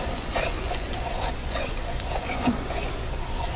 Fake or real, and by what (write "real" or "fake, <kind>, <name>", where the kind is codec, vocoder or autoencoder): fake, vocoder, Vocos